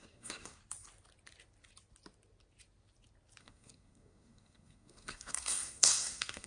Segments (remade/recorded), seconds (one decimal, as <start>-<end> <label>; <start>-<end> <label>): 0.0-0.6 remade; 0.6-3.4 recorded; 3.4-6.5 remade